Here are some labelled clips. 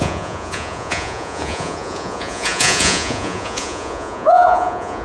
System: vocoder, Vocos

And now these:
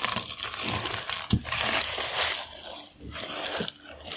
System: none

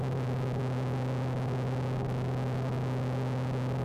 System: none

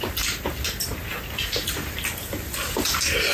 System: none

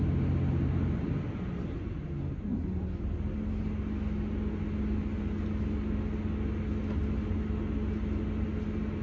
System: none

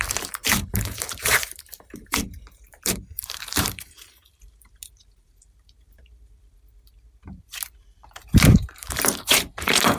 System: vocoder, BigVGAN v2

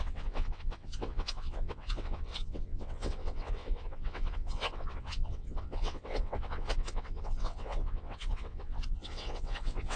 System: vocoder, WaveNeXt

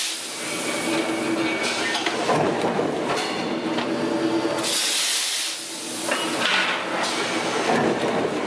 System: none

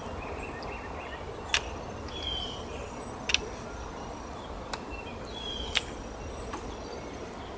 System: none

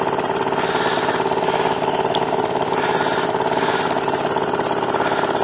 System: none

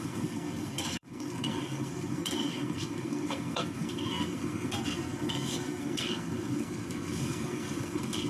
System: codec, SNAC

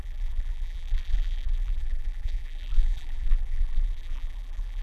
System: vocoder, BigVGAN v2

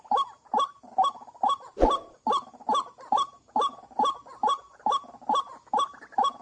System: none